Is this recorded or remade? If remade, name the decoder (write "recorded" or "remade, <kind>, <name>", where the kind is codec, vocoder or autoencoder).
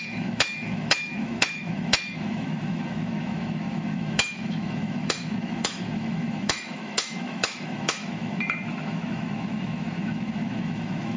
remade, autoencoder, DAC-VAE